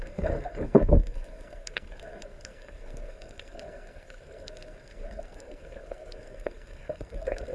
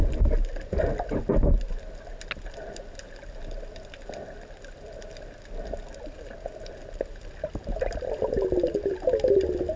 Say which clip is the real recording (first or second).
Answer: second